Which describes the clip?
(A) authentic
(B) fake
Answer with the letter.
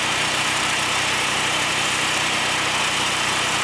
B